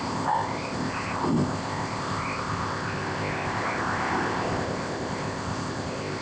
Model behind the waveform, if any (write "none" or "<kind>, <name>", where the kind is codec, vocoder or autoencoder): codec, ZipCodec